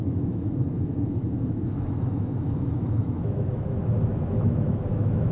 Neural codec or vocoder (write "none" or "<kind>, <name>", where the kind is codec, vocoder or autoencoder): autoencoder, DAC-VAE